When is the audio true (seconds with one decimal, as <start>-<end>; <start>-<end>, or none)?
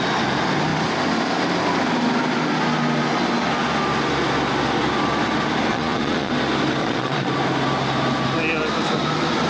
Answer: 0.0-5.7; 6.3-6.8; 7.3-9.5